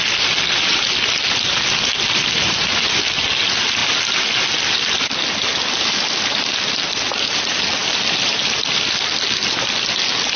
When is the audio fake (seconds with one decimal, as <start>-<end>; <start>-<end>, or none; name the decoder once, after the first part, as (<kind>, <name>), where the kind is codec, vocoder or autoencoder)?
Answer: 7.8-8.6 (vocoder, BigVGAN v2)